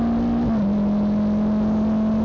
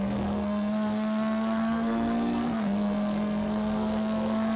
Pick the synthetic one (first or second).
second